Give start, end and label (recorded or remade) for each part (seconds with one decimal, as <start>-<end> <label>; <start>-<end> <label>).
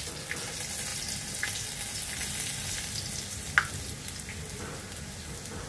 0.0-5.7 recorded